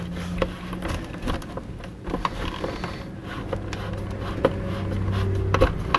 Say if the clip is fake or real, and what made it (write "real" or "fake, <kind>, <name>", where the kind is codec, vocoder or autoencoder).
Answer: real